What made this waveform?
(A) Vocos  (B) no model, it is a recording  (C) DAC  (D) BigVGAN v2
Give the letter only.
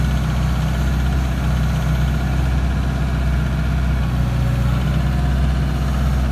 B